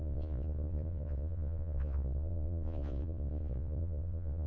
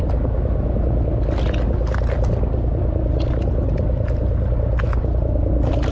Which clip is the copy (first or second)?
first